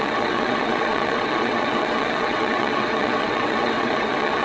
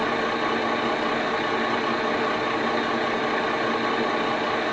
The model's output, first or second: first